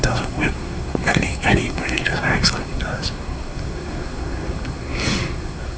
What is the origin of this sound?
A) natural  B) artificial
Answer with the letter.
B